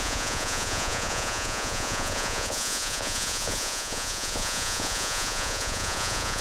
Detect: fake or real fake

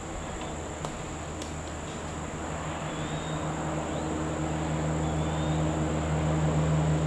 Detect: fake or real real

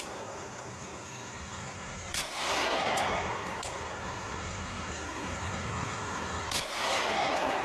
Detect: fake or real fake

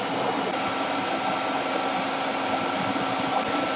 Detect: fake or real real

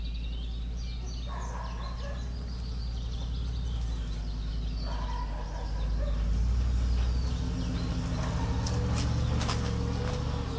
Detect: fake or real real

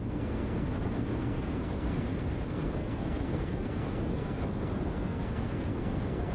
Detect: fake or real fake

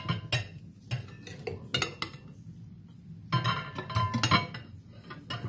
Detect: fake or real real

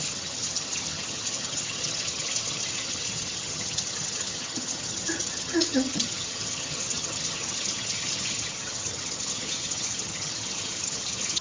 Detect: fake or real fake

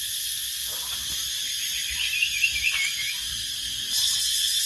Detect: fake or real real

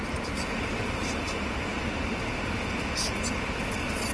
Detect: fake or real real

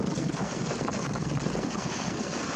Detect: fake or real fake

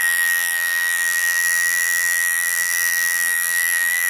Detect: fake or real fake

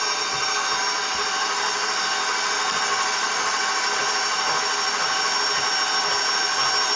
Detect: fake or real real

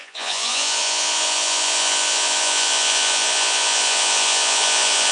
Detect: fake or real fake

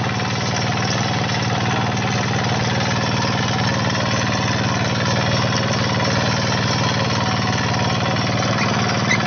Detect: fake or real real